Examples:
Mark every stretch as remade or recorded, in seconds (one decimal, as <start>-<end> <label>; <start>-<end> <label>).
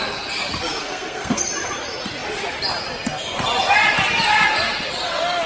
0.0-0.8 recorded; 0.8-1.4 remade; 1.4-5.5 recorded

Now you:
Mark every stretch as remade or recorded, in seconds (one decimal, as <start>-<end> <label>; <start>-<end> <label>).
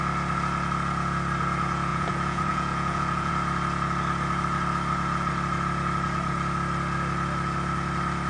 0.0-1.9 recorded; 1.9-3.3 remade; 3.3-8.3 recorded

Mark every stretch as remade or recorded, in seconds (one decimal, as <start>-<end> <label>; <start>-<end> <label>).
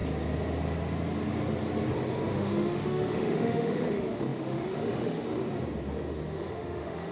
0.0-2.3 recorded; 2.3-5.4 remade; 5.4-6.1 recorded; 6.1-7.1 remade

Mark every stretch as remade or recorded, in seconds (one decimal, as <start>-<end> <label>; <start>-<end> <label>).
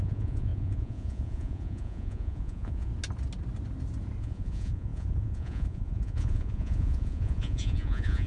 0.0-2.9 remade; 2.9-4.2 recorded; 4.2-8.3 remade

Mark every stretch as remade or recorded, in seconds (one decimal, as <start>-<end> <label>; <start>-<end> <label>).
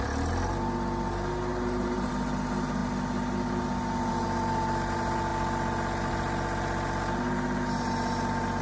0.0-1.5 recorded; 1.5-2.1 remade; 2.1-8.6 recorded